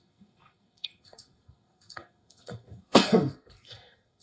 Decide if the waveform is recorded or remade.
remade